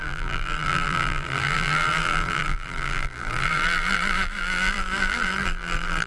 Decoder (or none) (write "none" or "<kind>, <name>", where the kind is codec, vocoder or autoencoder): vocoder, BigVGAN v2